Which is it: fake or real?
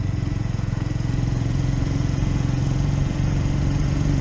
fake